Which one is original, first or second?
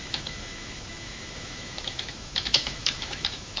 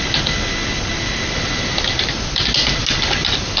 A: second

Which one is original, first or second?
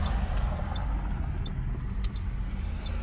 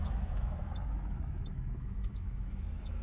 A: first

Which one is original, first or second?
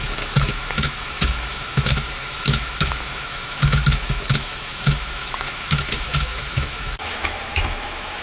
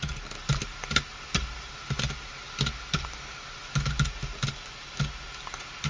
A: second